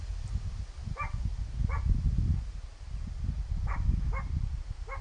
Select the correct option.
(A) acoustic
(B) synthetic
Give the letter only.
A